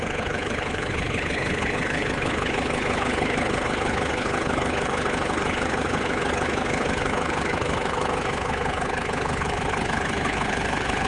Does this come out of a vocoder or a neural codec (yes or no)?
yes